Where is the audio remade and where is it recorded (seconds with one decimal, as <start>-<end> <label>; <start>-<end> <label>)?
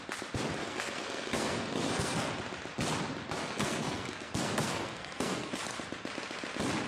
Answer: 0.0-0.6 recorded; 0.6-2.3 remade; 2.3-3.4 recorded; 3.4-5.5 remade; 5.5-6.9 recorded